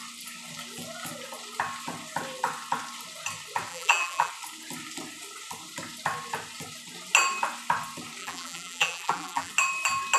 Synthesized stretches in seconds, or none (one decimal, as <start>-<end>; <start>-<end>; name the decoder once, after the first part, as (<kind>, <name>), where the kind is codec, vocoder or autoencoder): 3.7-4.3 (vocoder, BigVGAN v2); 8.2-9.5